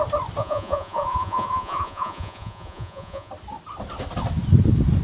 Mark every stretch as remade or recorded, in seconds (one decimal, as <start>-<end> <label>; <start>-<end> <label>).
0.0-0.4 recorded; 0.4-3.3 remade; 3.3-5.0 recorded